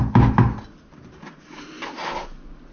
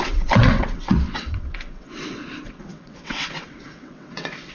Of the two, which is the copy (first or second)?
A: second